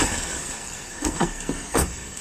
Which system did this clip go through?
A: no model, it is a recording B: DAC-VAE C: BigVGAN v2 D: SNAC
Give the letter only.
D